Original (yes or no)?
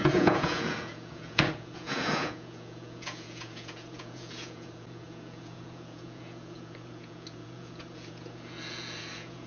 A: no